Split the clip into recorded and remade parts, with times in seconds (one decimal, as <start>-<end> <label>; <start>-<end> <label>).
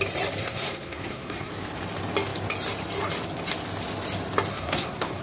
0.0-0.4 recorded; 0.4-1.5 remade; 1.5-4.5 recorded; 4.5-5.2 remade